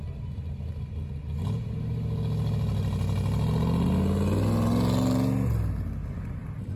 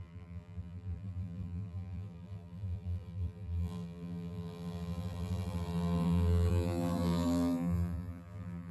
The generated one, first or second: second